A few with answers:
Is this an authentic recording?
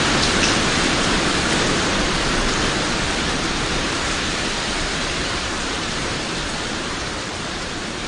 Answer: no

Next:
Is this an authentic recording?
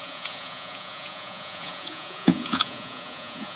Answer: no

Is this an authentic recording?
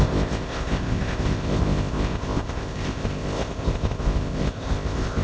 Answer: no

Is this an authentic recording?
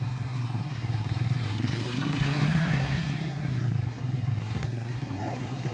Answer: no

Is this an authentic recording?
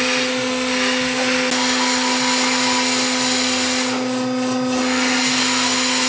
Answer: yes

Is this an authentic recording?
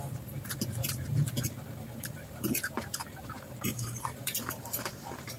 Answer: no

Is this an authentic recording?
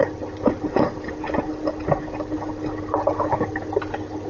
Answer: yes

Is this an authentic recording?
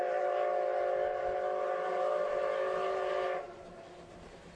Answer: yes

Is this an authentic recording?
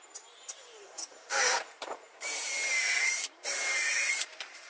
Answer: no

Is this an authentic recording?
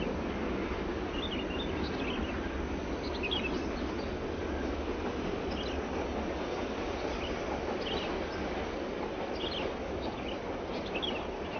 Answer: yes